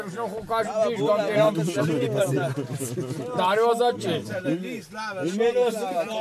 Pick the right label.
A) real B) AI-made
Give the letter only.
A